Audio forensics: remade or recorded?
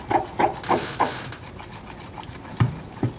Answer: recorded